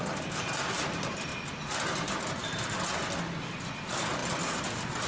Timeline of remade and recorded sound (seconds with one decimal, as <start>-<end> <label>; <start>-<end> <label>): 0.0-5.1 recorded